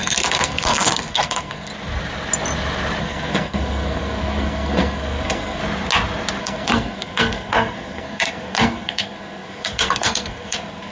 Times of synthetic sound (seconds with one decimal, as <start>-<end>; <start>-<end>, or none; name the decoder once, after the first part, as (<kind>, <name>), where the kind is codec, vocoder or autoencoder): 0.0-1.7 (codec, SNAC); 3.0-5.6; 6.4-10.9